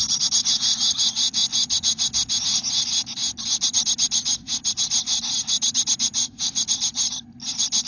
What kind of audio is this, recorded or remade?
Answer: recorded